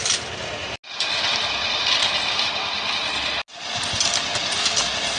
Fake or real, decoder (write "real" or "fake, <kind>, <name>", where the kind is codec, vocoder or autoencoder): real